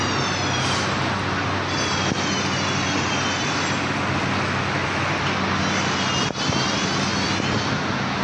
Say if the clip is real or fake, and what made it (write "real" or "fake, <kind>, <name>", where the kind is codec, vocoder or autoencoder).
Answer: real